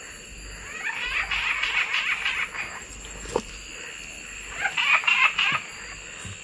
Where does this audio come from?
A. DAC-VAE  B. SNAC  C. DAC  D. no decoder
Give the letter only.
D